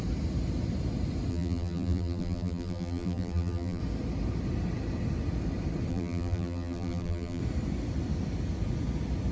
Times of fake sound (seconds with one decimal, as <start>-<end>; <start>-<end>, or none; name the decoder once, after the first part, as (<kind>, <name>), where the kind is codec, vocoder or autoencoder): 1.3-3.8 (vocoder, BigVGAN v2); 5.9-7.4